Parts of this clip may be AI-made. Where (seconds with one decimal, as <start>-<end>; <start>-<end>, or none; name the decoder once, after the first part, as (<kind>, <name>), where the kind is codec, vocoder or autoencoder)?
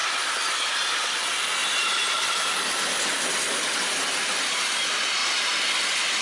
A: 1.6-3.8 (vocoder, BigVGAN v2)